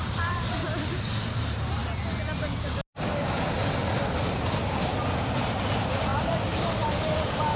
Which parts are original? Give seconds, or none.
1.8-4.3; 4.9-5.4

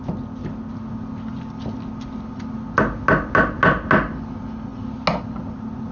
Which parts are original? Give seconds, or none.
0.0-5.9

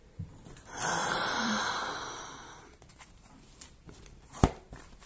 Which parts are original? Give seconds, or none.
0.0-1.0; 2.1-5.1

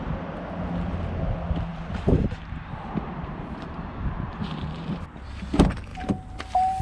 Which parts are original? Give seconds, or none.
0.0-1.7; 5.0-5.9

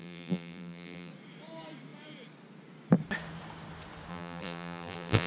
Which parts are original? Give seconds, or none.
1.1-4.1

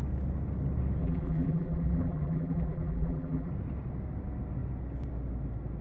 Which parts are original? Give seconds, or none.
0.0-1.0; 3.5-5.8

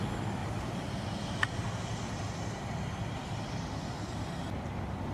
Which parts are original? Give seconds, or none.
0.0-0.4; 0.9-5.1